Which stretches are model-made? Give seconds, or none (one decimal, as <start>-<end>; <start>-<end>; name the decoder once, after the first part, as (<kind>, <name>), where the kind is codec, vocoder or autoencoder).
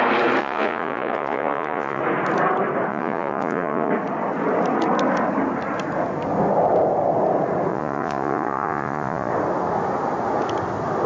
0.4-2.0 (vocoder, Vocos); 2.9-3.9; 7.7-9.3